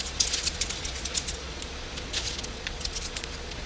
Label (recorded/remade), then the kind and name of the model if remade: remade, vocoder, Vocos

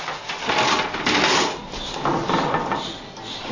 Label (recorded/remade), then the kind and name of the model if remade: recorded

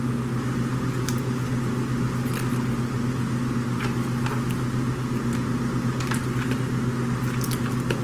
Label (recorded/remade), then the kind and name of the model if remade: recorded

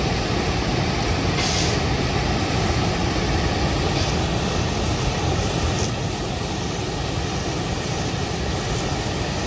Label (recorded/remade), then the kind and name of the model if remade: recorded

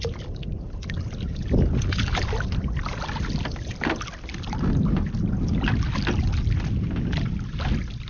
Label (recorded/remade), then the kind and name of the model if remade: recorded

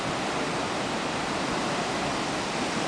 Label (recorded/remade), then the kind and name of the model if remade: recorded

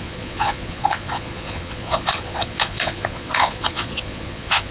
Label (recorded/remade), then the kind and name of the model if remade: remade, vocoder, Vocos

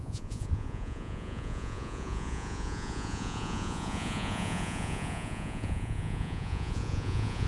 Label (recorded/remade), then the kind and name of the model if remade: remade, vocoder, Vocos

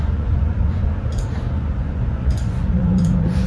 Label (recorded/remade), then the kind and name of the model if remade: remade, vocoder, Vocos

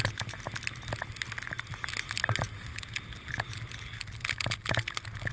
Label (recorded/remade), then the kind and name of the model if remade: recorded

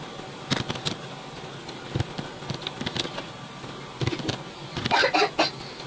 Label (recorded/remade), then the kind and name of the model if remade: recorded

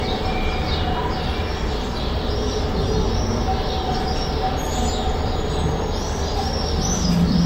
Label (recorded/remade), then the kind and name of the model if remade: recorded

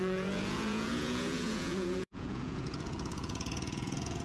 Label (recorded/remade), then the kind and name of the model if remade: remade, vocoder, Vocos